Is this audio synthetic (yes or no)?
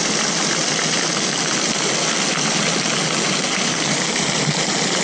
no